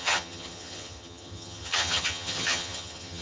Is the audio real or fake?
fake